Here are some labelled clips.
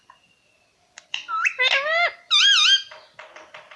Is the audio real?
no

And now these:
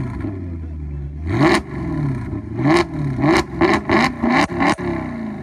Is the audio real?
yes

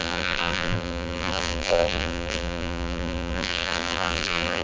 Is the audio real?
no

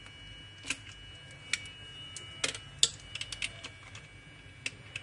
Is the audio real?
yes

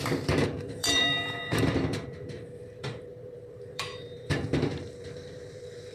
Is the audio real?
no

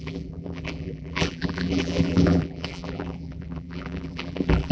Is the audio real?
no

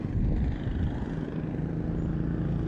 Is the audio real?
yes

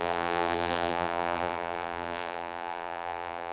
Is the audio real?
no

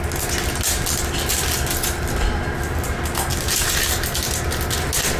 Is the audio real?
yes